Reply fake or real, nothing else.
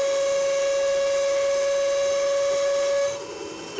real